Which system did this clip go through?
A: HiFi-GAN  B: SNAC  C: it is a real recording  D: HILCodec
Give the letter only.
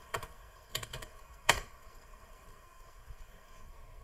B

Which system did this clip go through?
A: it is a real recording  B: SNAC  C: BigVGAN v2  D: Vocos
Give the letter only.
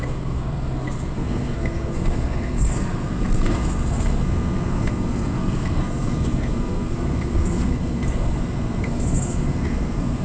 B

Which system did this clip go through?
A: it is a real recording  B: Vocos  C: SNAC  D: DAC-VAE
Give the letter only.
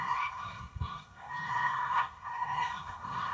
C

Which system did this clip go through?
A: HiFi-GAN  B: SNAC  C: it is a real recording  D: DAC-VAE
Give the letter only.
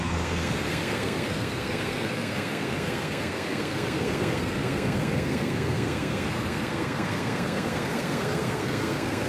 B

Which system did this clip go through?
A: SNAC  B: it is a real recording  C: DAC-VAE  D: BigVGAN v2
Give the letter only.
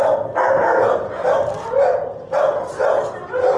B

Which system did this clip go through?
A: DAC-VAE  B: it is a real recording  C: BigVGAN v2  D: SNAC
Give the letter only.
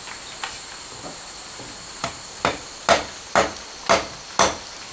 B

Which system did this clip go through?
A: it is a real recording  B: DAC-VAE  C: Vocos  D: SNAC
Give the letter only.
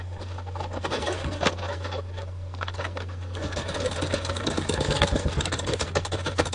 D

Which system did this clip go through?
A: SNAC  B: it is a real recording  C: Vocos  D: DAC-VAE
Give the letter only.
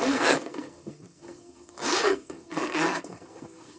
A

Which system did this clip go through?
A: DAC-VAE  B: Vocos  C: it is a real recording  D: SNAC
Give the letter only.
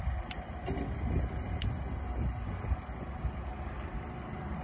C